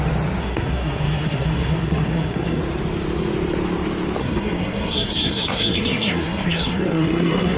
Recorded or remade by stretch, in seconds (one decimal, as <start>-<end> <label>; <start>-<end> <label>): 0.0-0.4 recorded; 0.4-2.6 remade; 2.6-4.2 recorded; 4.2-7.6 remade